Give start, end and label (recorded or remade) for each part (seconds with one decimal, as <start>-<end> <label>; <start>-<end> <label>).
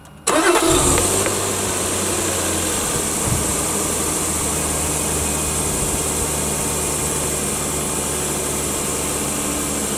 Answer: 0.0-3.5 recorded; 3.5-5.0 remade; 5.0-10.0 recorded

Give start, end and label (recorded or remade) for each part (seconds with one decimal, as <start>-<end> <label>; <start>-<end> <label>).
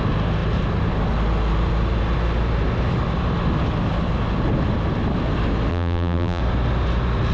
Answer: 0.0-5.7 recorded; 5.7-6.4 remade; 6.4-7.3 recorded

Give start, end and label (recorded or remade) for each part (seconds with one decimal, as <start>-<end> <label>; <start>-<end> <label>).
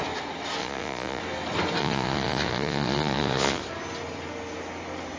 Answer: 0.0-0.6 recorded; 0.6-1.2 remade; 1.2-1.8 recorded; 1.8-3.6 remade; 3.6-5.2 recorded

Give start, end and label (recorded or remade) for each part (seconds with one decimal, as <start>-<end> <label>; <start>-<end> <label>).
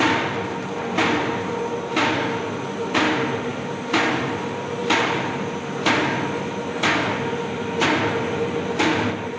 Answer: 0.0-3.5 recorded; 3.5-4.1 remade; 4.1-4.8 recorded; 4.8-5.7 remade; 5.7-9.4 recorded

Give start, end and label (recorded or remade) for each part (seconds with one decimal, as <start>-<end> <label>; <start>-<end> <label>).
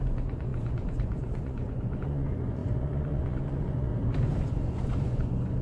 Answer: 0.0-3.9 remade; 3.9-4.4 recorded; 4.4-5.6 remade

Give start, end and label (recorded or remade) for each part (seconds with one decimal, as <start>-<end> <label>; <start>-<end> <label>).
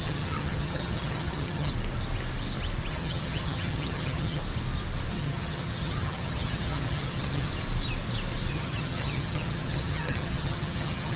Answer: 0.0-1.7 remade; 1.7-2.9 recorded; 2.9-4.4 remade; 4.4-5.1 recorded; 5.1-7.5 remade; 7.5-8.5 recorded; 8.5-11.2 remade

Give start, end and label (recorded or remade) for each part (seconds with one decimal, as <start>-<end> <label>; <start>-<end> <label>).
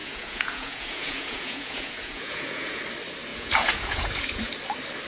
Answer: 0.0-2.8 remade; 2.8-3.3 recorded; 3.3-4.5 remade; 4.5-5.1 recorded